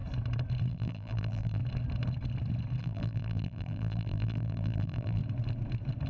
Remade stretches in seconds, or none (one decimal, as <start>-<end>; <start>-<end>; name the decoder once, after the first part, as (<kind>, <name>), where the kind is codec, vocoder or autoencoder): 0.7-1.6 (vocoder, BigVGAN v2); 2.8-5.2